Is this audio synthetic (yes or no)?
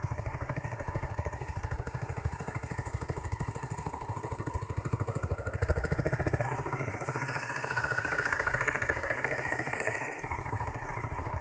yes